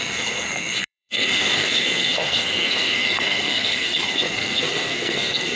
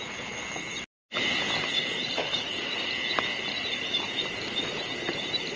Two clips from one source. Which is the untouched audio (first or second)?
second